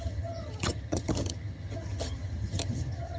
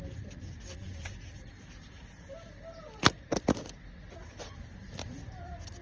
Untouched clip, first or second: second